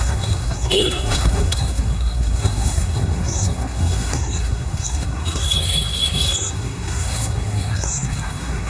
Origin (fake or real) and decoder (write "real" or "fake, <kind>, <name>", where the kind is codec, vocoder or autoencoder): fake, codec, SNAC